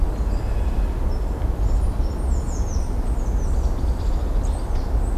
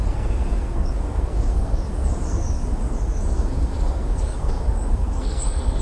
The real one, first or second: first